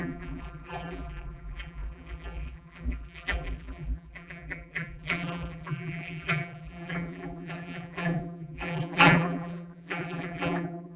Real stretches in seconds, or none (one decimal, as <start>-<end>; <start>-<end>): none